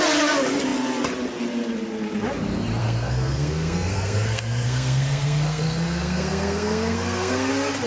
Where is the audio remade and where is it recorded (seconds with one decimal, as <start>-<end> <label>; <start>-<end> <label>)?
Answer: 0.0-2.8 recorded; 2.8-7.5 remade; 7.5-7.9 recorded